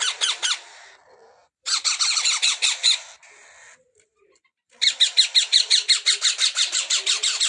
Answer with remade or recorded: remade